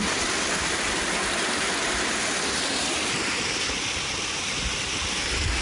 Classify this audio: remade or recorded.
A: remade